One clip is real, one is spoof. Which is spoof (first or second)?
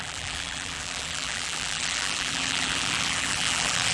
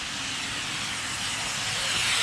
first